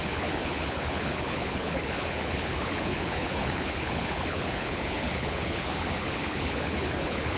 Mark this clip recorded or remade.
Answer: remade